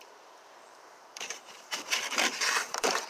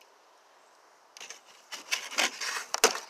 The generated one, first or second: first